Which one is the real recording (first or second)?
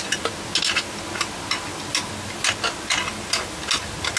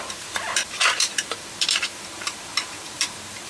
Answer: first